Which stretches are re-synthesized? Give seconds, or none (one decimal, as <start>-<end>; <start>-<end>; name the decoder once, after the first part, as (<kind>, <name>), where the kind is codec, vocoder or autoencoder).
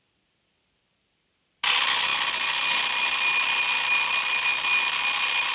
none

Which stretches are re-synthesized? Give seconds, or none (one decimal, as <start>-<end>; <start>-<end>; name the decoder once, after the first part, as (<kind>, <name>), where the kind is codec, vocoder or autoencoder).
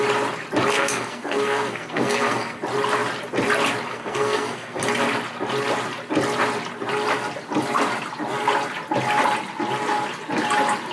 0.7-2.6 (codec, SNAC); 3.9-4.8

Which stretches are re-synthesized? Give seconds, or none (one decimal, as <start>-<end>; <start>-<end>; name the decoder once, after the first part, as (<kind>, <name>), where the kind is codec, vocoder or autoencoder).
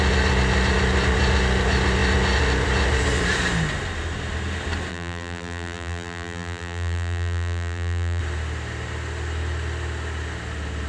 4.9-8.2 (vocoder, BigVGAN v2)